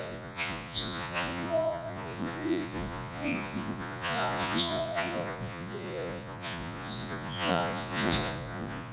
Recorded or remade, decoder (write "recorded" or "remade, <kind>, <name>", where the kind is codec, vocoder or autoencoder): remade, vocoder, Vocos